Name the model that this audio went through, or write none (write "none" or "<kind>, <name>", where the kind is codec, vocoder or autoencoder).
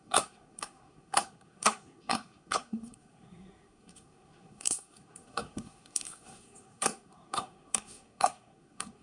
codec, SNAC